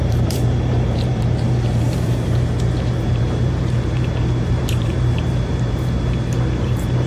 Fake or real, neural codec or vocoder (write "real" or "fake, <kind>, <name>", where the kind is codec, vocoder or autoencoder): fake, vocoder, BigVGAN v2